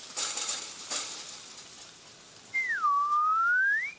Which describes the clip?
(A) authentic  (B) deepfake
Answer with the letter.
A